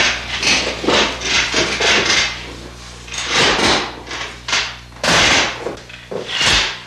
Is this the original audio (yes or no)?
yes